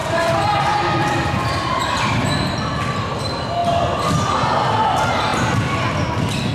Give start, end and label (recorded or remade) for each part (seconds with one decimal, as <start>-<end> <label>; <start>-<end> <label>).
0.0-2.7 remade; 2.7-6.5 recorded